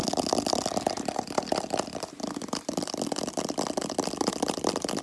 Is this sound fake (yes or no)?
no